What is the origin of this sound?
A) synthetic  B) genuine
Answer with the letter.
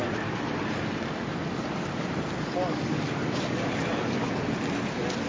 B